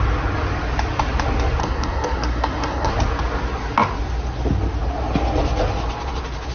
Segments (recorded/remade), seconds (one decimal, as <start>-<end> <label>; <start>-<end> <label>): 0.0-1.6 recorded; 1.6-2.9 remade; 2.9-6.5 recorded